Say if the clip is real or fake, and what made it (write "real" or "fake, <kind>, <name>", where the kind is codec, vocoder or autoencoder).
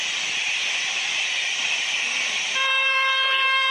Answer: fake, vocoder, BigVGAN v2